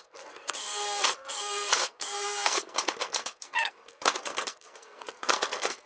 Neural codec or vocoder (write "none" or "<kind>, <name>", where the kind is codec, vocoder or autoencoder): codec, SNAC